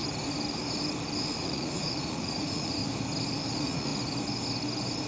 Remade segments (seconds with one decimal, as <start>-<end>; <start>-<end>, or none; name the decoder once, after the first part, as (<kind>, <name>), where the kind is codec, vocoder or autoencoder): 1.4-2.8 (vocoder, Vocos); 3.5-3.9